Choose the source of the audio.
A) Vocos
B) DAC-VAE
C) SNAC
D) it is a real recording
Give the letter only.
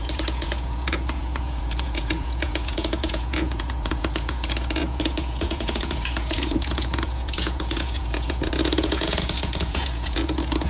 A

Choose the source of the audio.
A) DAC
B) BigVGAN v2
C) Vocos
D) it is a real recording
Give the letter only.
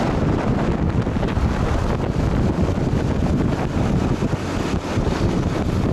D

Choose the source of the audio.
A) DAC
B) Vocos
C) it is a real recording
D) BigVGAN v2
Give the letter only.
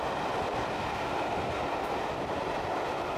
C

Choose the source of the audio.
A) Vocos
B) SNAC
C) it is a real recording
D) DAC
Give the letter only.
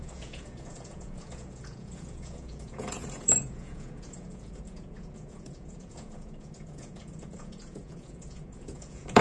A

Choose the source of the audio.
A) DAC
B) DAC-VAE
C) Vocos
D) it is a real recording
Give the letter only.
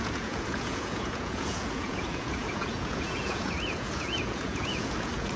C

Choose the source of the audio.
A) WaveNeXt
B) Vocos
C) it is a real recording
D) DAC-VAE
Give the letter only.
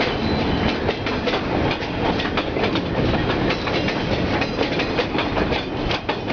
C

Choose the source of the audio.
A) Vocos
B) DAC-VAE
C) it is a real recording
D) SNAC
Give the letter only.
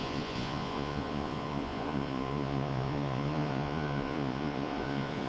A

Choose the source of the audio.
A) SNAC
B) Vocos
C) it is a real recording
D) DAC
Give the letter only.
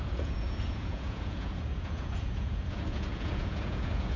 B